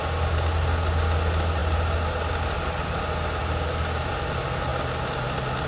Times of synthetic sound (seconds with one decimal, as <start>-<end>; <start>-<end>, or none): none